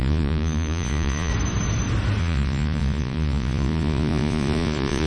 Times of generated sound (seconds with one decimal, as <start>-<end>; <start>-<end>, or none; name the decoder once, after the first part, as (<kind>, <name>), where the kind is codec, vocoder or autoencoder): 0.0-1.3 (vocoder, Vocos); 2.2-5.1